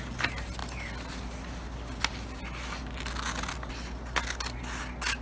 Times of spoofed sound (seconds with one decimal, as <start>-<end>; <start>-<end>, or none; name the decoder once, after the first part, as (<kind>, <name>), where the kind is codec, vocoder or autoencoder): none